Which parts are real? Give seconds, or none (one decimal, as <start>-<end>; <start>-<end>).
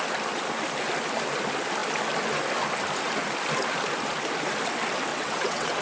0.0-5.1